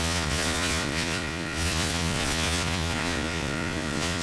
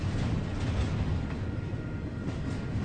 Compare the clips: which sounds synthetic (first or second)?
first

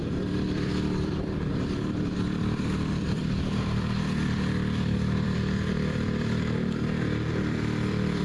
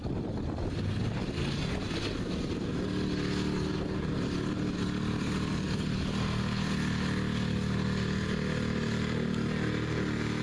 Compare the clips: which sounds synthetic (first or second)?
first